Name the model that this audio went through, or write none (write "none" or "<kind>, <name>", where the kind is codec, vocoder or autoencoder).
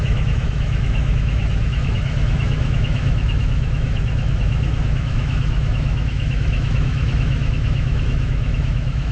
autoencoder, DAC-VAE